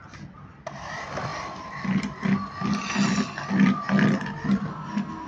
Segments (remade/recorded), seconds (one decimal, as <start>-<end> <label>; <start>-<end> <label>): 0.0-4.7 recorded; 4.7-5.3 remade

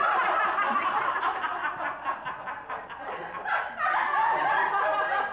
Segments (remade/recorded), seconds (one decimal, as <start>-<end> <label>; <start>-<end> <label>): 0.0-5.3 recorded

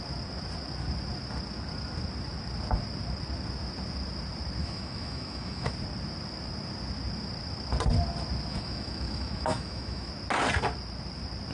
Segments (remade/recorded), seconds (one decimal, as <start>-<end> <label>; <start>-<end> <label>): 0.0-4.6 recorded; 4.6-5.7 remade; 5.7-8.5 recorded; 8.5-10.1 remade; 10.1-11.5 recorded

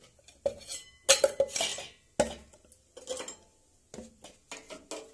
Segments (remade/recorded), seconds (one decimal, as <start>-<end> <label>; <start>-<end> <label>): 0.0-5.1 recorded

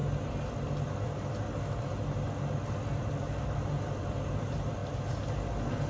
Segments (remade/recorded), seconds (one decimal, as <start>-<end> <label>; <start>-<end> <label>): 0.0-3.0 recorded; 3.0-4.8 remade; 4.8-5.9 recorded

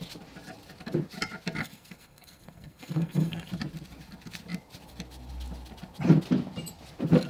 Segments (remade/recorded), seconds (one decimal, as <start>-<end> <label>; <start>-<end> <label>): 0.0-1.6 recorded; 1.6-3.5 remade; 3.5-7.3 recorded

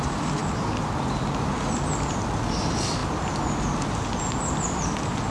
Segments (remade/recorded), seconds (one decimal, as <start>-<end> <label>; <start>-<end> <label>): 0.0-5.3 recorded